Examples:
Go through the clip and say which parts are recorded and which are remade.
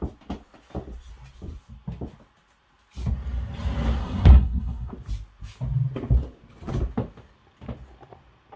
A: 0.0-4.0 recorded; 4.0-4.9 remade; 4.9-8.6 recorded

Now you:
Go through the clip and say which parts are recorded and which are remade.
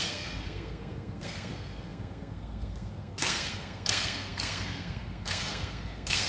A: 0.0-6.3 remade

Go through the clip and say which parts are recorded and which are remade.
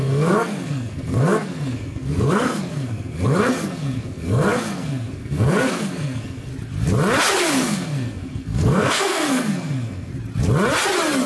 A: 0.0-6.5 remade; 6.5-7.5 recorded; 7.5-10.1 remade; 10.1-11.3 recorded